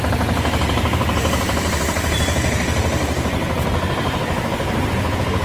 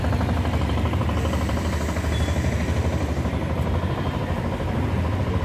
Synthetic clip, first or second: first